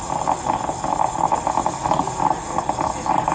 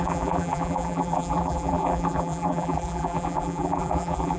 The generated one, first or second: second